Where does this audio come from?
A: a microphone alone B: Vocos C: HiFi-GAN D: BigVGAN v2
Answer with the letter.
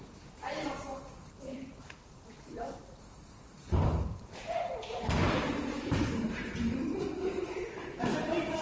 D